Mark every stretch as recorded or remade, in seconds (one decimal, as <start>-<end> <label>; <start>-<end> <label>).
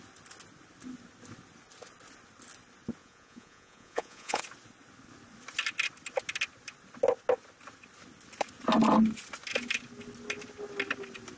0.0-3.0 recorded; 3.0-4.4 remade; 4.4-11.4 recorded